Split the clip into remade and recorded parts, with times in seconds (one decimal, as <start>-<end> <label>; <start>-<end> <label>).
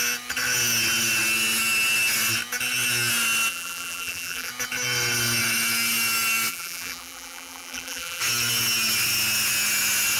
0.0-3.5 recorded; 3.5-4.5 remade; 4.5-6.5 recorded; 6.5-8.2 remade; 8.2-10.2 recorded